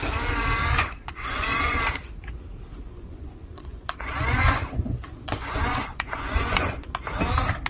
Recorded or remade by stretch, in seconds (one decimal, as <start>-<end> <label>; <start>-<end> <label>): 0.0-0.6 recorded; 0.6-1.8 remade; 1.8-2.7 recorded; 2.7-6.9 remade; 6.9-7.7 recorded